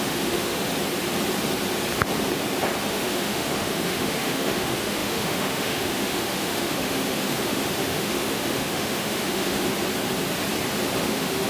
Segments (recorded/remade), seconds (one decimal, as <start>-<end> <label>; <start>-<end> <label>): 0.0-0.5 remade; 0.5-2.9 recorded; 2.9-9.7 remade; 9.7-11.0 recorded; 11.0-11.5 remade